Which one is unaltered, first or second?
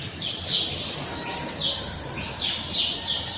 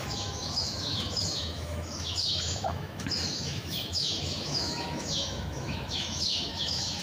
first